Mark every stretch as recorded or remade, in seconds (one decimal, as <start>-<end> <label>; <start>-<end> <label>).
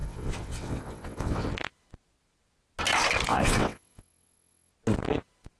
0.0-1.5 remade; 1.5-3.3 recorded; 3.3-4.7 remade; 4.7-5.6 recorded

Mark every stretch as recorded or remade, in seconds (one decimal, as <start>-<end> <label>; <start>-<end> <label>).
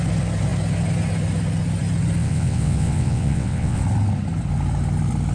0.0-2.2 recorded; 2.2-3.8 remade; 3.8-5.3 recorded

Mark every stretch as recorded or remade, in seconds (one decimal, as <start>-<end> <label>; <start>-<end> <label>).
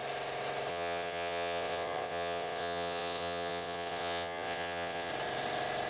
0.0-0.7 recorded; 0.7-5.1 remade; 5.1-5.9 recorded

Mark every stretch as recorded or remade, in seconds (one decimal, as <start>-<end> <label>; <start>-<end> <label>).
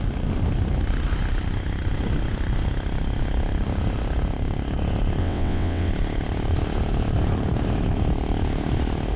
0.0-5.2 recorded; 5.2-5.9 remade; 5.9-9.2 recorded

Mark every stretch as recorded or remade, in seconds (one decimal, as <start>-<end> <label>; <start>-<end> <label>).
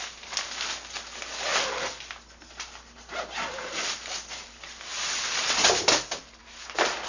0.0-7.1 recorded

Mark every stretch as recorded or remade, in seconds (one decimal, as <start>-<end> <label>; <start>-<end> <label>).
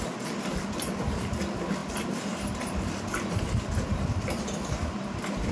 0.0-5.5 recorded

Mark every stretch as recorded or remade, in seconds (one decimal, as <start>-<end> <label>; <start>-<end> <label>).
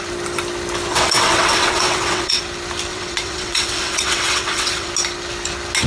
0.0-0.9 recorded; 0.9-2.4 remade; 2.4-2.9 recorded; 2.9-4.9 remade; 4.9-5.9 recorded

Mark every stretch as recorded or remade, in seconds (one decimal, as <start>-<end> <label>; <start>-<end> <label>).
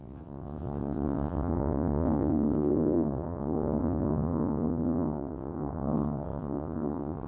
0.0-7.3 remade